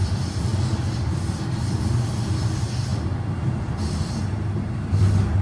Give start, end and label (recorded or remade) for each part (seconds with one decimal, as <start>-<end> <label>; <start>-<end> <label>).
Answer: 0.0-5.4 recorded